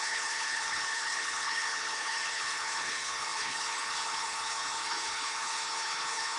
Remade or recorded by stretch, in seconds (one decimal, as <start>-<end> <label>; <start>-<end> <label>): 0.0-6.4 remade